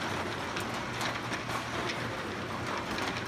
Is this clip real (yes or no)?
yes